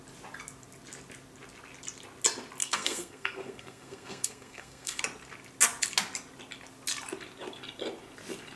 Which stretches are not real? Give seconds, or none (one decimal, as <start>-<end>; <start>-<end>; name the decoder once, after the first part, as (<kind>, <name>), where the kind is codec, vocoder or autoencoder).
2.6-5.0 (codec, SNAC)